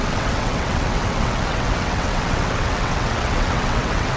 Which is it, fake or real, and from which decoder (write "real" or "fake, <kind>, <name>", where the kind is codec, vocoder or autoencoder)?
fake, vocoder, WaveNeXt